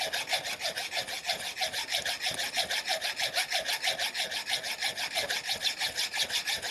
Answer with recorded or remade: recorded